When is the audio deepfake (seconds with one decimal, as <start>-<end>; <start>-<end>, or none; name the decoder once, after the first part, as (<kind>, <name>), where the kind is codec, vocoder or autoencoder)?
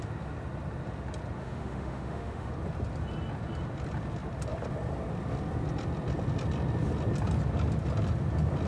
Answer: 1.4-2.5 (autoencoder, DAC-VAE)